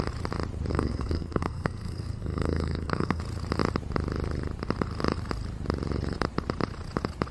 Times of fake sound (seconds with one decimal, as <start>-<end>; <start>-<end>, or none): 0.7-3.2